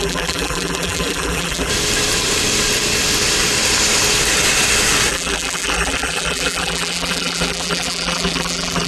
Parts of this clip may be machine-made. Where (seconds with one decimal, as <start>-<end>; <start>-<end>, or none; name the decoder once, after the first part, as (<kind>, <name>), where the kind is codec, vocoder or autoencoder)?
0.0-1.7 (vocoder, BigVGAN v2); 5.1-8.9